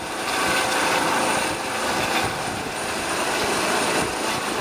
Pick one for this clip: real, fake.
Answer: real